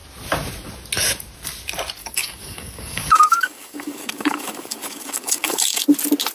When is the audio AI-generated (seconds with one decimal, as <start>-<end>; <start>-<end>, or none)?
2.0-5.8